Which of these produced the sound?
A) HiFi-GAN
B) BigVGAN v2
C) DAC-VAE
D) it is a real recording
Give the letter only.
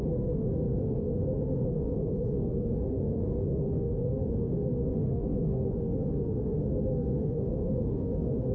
C